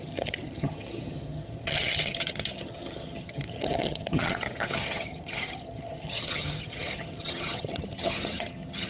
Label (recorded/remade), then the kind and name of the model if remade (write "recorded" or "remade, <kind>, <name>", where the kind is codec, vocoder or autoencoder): remade, vocoder, HiFi-GAN